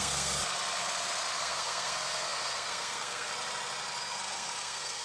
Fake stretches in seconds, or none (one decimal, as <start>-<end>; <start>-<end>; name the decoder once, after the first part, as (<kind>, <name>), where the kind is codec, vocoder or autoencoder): 0.0-0.4 (codec, SNAC); 1.4-3.3; 4.0-5.0